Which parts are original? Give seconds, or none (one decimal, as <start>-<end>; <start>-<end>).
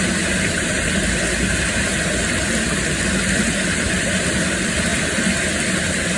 0.0-6.2